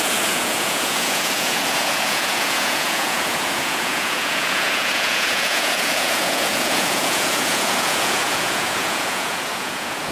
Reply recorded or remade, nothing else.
remade